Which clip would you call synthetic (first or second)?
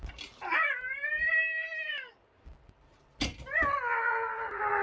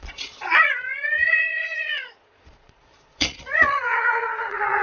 second